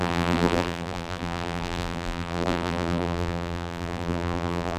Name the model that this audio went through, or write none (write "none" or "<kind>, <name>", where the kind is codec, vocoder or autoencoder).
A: vocoder, BigVGAN v2